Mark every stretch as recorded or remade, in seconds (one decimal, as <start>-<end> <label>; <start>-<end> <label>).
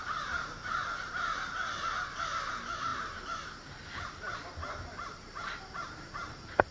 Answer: 0.0-0.6 remade; 0.6-2.5 recorded; 2.5-6.7 remade